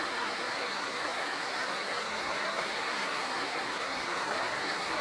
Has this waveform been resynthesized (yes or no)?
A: yes